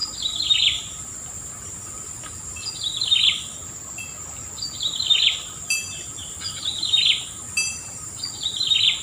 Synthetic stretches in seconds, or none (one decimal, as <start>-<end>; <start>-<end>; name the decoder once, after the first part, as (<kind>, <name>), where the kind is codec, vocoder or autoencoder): 0.0-2.7 (vocoder, BigVGAN v2); 3.6-6.6